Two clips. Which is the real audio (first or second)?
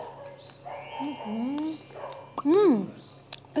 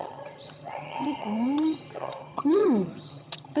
first